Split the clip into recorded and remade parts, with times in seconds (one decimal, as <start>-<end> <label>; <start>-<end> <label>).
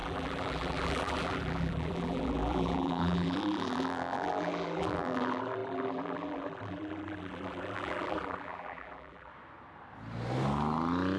0.0-9.3 remade; 9.3-11.2 recorded